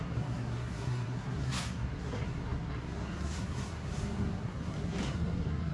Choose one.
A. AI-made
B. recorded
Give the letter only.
A